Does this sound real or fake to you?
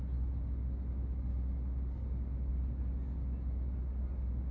real